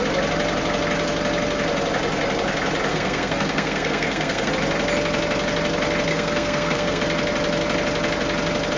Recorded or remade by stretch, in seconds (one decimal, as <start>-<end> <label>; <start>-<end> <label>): 0.0-2.9 recorded; 2.9-4.5 remade; 4.5-6.1 recorded; 6.1-7.0 remade; 7.0-8.8 recorded